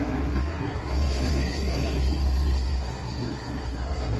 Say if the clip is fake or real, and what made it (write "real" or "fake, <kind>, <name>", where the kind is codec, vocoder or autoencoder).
fake, codec, SNAC